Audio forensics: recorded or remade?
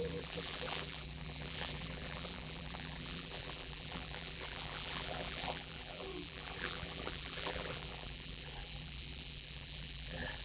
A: remade